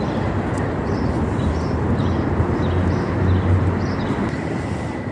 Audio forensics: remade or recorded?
recorded